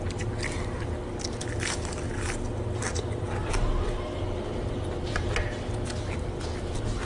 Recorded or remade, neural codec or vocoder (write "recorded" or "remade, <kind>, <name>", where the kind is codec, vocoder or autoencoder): recorded